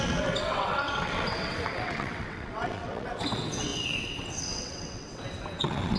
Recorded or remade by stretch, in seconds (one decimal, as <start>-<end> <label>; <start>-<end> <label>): 0.0-6.0 remade